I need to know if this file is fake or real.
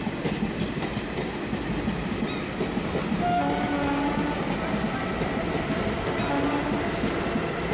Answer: real